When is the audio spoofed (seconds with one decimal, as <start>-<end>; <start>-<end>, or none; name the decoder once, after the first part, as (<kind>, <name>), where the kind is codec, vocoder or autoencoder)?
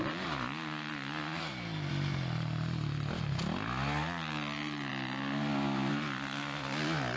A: none